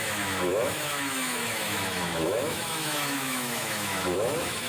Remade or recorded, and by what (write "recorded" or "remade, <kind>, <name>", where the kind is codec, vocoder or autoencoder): remade, autoencoder, DAC-VAE